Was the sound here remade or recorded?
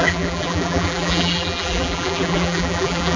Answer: remade